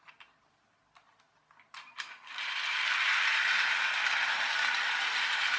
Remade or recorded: recorded